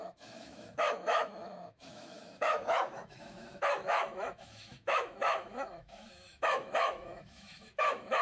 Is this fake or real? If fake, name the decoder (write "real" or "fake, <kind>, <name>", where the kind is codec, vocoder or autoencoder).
fake, autoencoder, DAC-VAE